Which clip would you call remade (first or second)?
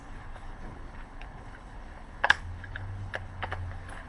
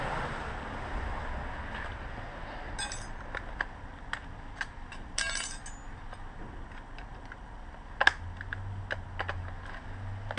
first